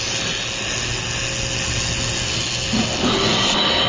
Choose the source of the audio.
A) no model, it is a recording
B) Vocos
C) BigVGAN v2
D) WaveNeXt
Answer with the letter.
A